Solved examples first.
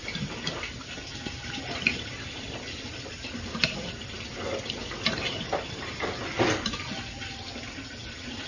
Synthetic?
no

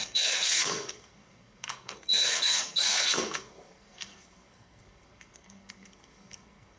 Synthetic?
yes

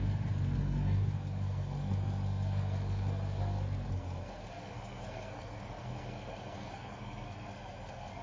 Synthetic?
yes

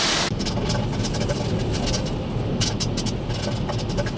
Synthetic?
no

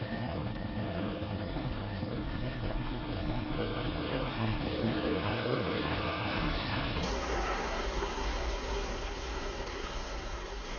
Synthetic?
yes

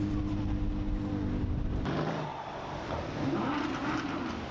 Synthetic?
no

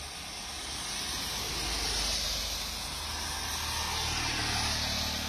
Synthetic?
no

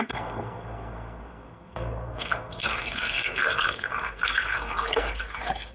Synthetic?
yes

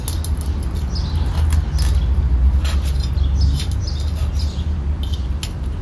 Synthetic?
no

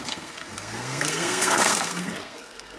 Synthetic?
yes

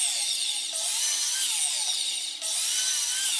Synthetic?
no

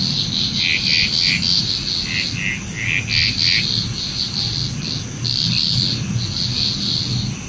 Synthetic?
no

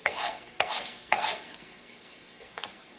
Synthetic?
yes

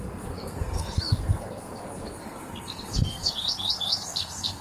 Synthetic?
yes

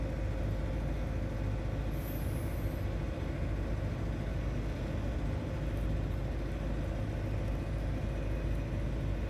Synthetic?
no